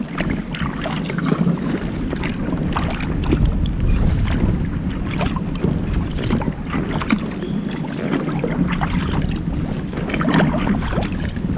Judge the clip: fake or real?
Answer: real